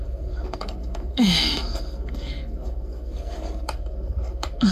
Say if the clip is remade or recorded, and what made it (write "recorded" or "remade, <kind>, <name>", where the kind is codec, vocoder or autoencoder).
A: remade, codec, SNAC